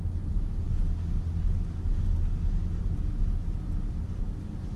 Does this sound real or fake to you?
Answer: real